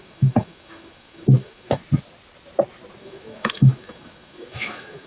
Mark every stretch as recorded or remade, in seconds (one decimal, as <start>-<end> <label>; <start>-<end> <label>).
0.0-1.8 remade; 1.8-3.0 recorded; 3.0-5.1 remade